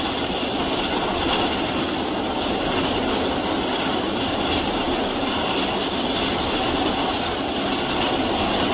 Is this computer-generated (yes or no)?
no